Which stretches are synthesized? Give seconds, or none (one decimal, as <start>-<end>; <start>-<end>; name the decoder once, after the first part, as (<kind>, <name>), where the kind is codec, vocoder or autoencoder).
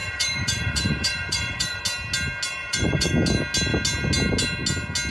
0.0-1.8 (vocoder, Vocos); 2.6-3.1